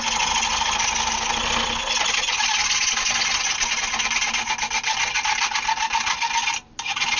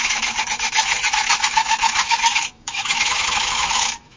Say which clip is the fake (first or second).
second